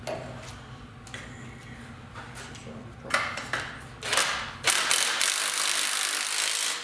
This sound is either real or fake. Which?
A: real